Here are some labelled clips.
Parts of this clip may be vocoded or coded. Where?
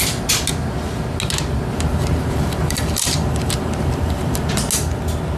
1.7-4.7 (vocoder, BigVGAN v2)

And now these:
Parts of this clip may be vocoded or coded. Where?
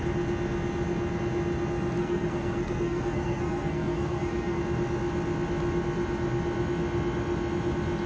2.0-4.6 (codec, SNAC)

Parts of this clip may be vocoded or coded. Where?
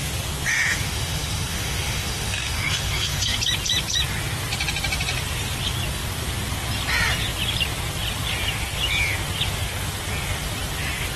0.5-3.4 (autoencoder, DAC-VAE)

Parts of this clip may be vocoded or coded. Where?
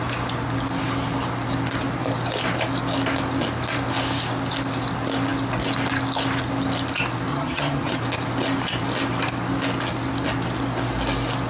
7.3-8.0 (vocoder, HiFi-GAN)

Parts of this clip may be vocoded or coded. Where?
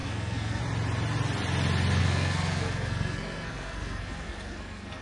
0.0-0.6 (codec, SNAC); 2.0-5.0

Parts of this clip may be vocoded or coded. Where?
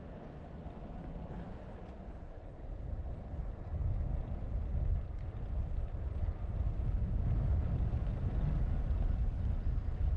none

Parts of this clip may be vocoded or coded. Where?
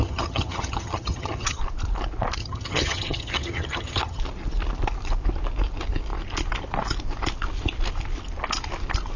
0.0-1.6 (vocoder, HiFi-GAN); 2.4-4.2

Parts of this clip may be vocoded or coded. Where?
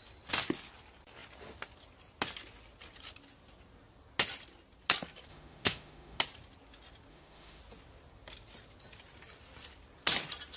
5.3-6.2 (autoencoder, DAC-VAE); 7.1-7.6